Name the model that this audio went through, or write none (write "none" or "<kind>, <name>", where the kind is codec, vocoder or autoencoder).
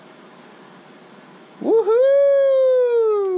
none